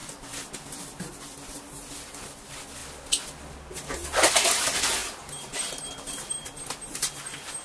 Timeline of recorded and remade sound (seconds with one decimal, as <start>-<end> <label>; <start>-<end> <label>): 0.0-2.2 remade; 2.2-7.6 recorded